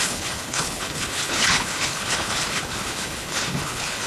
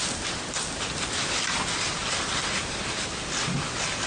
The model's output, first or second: first